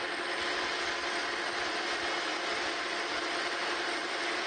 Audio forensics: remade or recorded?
recorded